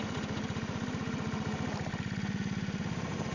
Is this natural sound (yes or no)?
yes